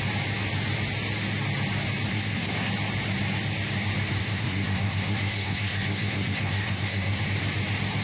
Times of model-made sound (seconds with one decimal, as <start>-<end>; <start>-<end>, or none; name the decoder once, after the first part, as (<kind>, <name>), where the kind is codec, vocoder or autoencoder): 2.1-2.7 (codec, SNAC); 4.2-7.2